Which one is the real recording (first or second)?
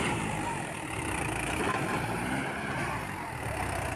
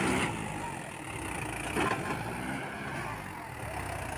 second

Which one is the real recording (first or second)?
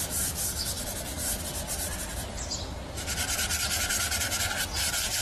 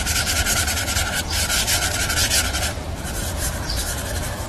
first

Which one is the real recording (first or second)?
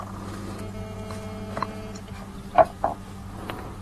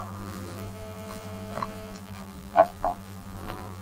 first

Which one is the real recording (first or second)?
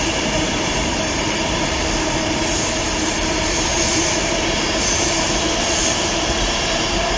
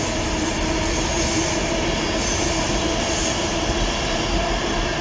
second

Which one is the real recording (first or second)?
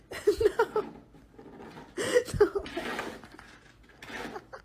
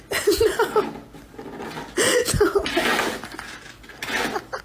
second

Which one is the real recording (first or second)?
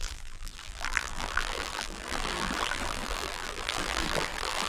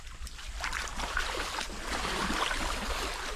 second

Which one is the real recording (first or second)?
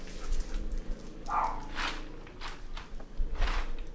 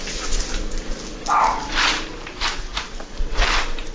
first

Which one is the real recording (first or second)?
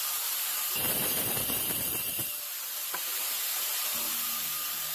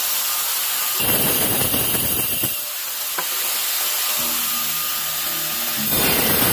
second